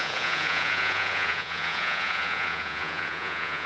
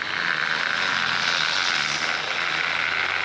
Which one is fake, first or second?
first